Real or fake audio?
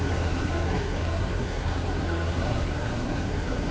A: fake